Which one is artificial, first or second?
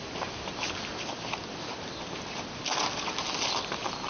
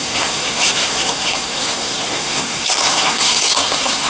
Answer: second